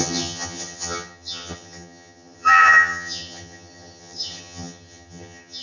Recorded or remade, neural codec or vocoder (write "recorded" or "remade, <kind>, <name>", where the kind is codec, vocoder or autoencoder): remade, vocoder, HiFi-GAN